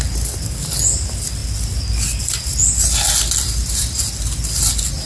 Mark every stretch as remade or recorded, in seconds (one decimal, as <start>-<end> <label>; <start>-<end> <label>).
0.0-5.1 recorded